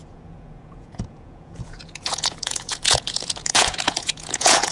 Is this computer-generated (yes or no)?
yes